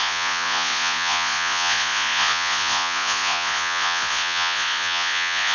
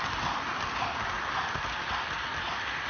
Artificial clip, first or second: first